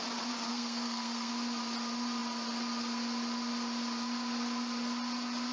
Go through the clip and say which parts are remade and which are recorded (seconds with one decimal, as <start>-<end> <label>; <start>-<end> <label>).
0.0-0.5 recorded; 0.5-1.3 remade; 1.3-5.5 recorded